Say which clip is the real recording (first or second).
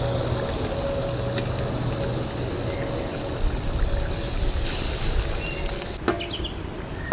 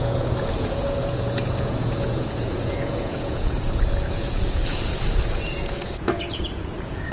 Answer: first